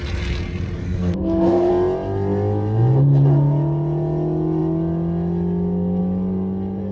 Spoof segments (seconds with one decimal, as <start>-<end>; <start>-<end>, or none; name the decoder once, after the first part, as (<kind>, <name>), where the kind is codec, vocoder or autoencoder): 0.8-1.7 (codec, SNAC)